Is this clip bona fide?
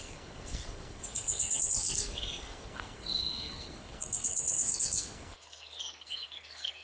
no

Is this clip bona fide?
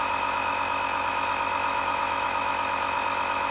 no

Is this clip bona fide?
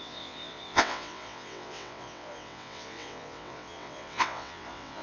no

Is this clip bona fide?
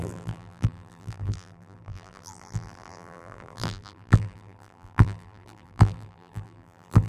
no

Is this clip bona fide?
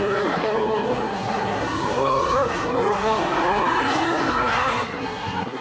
no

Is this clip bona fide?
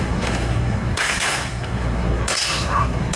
no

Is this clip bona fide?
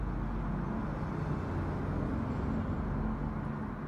yes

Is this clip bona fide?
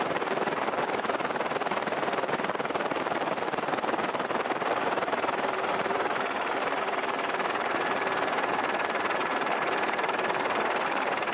no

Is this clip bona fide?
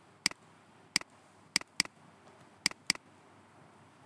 yes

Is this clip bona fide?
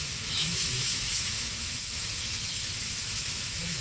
no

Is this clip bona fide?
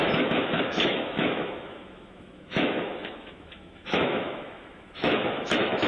no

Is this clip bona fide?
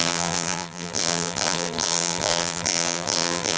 no